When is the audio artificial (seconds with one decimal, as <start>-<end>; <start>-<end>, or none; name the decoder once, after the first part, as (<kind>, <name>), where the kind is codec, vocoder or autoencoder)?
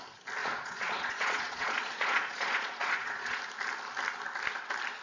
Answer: 0.4-3.4 (vocoder, Vocos)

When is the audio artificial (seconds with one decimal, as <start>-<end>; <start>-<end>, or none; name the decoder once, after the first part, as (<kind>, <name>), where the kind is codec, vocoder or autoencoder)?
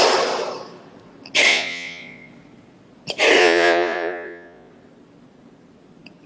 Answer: 1.5-2.3 (vocoder, Vocos); 3.4-4.7